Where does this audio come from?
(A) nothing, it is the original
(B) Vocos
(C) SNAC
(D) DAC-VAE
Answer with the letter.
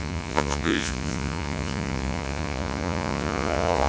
B